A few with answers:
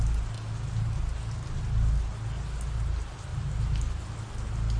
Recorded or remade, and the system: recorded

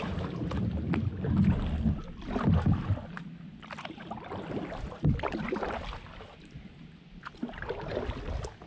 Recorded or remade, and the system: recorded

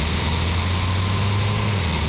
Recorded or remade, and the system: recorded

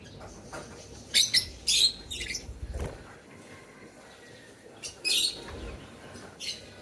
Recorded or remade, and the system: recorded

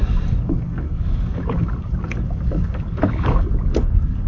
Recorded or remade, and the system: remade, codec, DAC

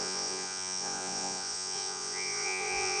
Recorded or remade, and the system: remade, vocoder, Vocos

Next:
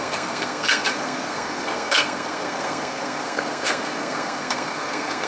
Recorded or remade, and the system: remade, codec, SNAC